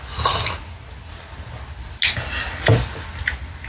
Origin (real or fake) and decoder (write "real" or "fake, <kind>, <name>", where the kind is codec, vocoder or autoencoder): real